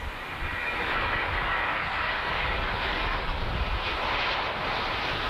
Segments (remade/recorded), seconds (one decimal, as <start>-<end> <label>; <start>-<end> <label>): 0.0-0.6 recorded; 0.6-3.5 remade; 3.5-5.3 recorded